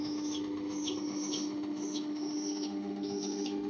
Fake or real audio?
fake